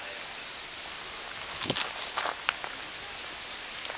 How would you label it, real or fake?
real